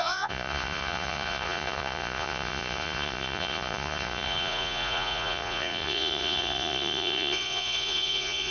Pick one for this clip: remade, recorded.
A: remade